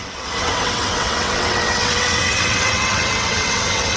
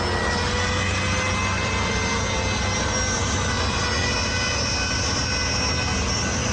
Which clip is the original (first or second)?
second